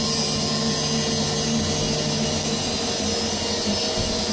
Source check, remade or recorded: recorded